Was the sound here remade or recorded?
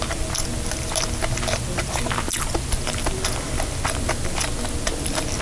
recorded